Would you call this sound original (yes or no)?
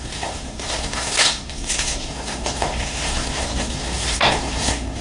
no